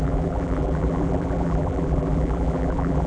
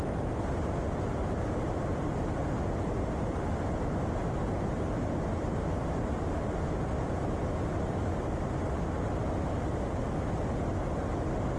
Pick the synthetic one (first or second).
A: first